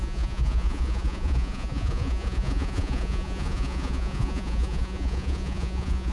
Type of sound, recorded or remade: remade